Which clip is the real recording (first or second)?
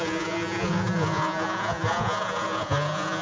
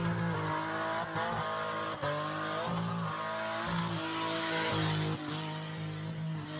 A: second